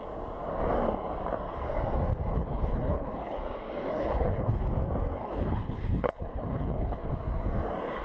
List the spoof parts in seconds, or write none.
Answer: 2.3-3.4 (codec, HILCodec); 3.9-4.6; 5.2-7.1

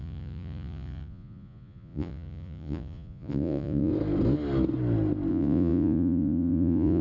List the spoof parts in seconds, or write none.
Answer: 0.0-3.9 (vocoder, Vocos); 5.3-7.0

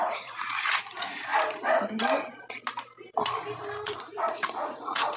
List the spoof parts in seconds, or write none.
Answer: 0.0-1.3 (vocoder, Vocos); 4.0-5.2

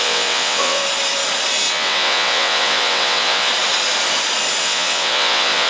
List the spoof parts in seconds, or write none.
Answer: 0.0-0.8 (vocoder, WaveNeXt); 1.7-3.5; 4.6-5.7

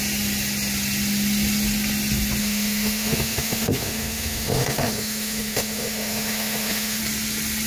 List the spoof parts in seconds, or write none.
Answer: 2.4-7.0 (autoencoder, DAC-VAE)